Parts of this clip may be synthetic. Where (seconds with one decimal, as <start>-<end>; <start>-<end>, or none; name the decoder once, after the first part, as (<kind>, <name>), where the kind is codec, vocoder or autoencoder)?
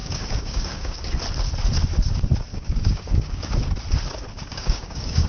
0.0-1.1 (codec, DAC); 2.5-3.5; 4.5-5.3